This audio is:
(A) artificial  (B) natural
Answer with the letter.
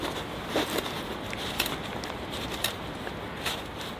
B